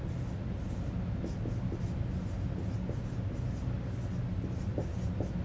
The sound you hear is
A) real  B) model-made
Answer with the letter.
A